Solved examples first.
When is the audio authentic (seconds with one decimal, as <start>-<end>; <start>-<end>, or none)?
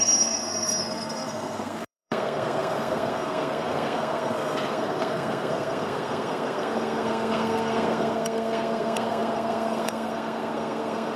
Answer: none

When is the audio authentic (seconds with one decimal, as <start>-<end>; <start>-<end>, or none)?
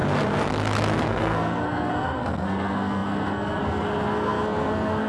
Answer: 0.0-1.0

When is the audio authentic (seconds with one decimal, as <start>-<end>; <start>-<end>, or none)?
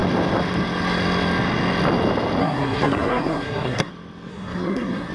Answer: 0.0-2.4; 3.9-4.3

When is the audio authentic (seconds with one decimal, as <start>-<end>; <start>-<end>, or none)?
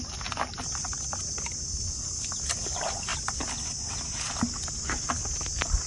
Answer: 0.0-5.9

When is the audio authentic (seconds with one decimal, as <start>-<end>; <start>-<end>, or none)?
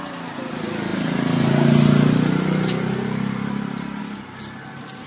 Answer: 0.0-5.1